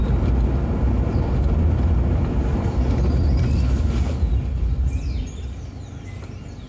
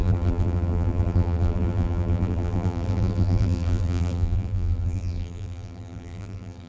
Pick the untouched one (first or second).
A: first